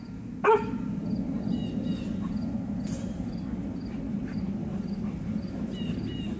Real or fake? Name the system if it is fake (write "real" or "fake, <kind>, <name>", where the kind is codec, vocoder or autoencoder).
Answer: real